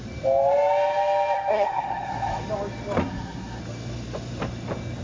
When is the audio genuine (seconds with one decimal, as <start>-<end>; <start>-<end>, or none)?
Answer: 0.0-1.5; 2.4-3.0; 3.6-5.0